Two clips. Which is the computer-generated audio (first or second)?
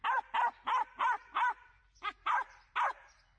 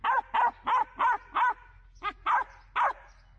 first